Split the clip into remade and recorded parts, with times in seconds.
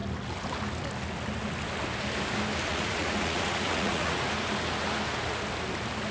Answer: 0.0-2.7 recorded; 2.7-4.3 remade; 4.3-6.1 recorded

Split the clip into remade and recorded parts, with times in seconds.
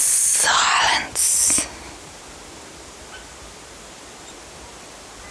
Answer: 0.0-5.3 recorded